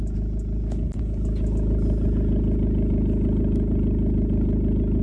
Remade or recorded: recorded